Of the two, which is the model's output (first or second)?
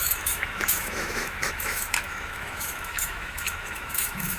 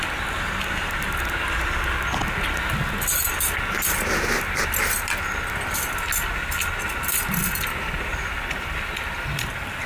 first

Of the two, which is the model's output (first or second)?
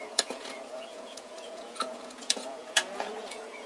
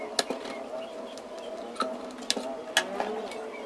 first